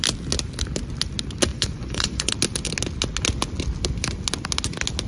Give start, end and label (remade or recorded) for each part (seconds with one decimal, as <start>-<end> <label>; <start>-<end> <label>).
0.0-1.5 recorded; 1.5-2.3 remade; 2.3-5.1 recorded

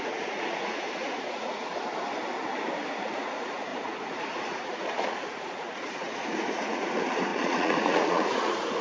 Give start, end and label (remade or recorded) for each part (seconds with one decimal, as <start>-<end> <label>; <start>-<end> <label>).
0.0-1.7 remade; 1.7-2.9 recorded; 2.9-8.8 remade

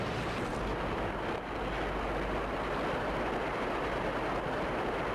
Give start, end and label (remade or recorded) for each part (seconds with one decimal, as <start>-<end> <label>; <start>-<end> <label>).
0.0-5.1 recorded

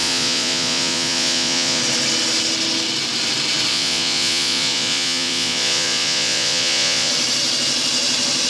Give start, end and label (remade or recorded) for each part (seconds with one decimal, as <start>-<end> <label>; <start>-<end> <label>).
0.0-1.8 remade; 1.8-3.7 recorded; 3.7-7.1 remade; 7.1-8.5 recorded

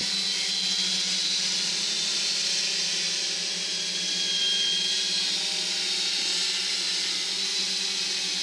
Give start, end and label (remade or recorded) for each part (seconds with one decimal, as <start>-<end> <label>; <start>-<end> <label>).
0.0-8.4 recorded